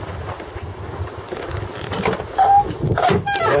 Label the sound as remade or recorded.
recorded